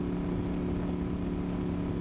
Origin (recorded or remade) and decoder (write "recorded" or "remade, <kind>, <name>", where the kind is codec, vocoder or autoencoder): recorded